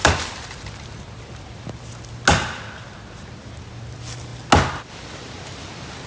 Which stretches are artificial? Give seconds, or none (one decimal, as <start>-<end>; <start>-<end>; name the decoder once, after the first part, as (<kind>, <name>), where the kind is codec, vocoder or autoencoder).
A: none